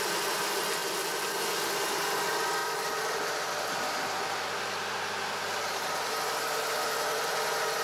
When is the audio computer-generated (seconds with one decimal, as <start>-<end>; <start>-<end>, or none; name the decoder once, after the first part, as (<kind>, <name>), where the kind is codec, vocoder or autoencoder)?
0.8-1.4 (vocoder, BigVGAN v2); 2.6-6.1